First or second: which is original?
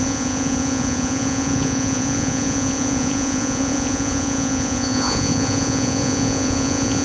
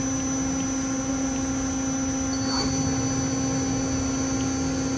second